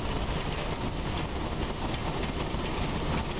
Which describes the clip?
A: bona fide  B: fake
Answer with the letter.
A